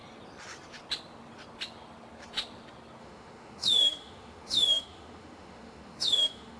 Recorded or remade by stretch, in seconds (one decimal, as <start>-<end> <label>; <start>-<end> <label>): 0.0-3.0 recorded; 3.0-6.6 remade